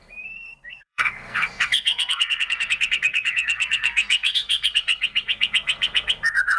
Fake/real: fake